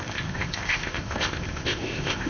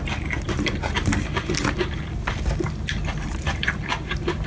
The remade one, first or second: first